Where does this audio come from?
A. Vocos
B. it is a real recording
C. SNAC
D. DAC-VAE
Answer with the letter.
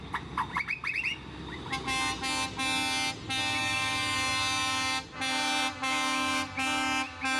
B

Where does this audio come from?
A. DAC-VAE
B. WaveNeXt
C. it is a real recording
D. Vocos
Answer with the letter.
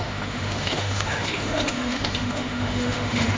A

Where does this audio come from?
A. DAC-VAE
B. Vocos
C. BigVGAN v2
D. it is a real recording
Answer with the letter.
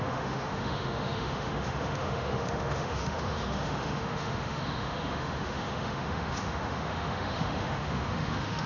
A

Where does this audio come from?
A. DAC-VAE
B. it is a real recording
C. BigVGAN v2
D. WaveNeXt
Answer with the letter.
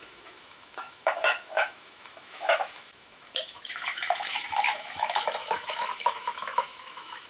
A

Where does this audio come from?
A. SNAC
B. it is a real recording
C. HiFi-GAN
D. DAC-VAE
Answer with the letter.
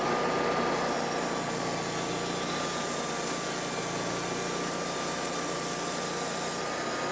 B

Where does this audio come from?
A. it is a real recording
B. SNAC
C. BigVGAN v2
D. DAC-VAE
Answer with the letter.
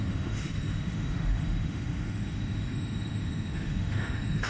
D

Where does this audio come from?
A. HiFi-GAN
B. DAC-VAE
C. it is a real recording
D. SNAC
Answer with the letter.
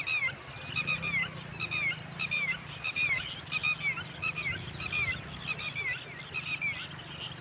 C